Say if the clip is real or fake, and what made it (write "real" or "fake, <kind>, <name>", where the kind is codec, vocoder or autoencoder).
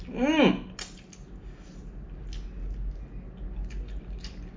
real